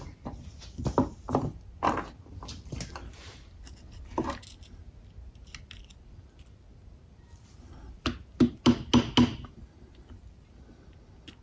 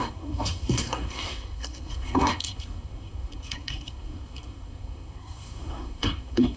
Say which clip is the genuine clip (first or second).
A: first